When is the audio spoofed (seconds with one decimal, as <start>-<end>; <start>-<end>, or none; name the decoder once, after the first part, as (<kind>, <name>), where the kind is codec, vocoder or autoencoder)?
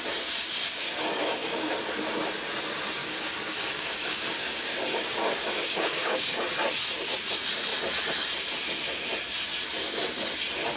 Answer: 0.6-1.8 (codec, DAC); 3.0-6.5